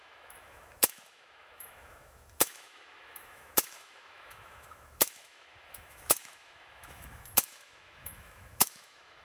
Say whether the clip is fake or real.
fake